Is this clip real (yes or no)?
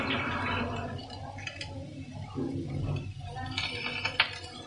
yes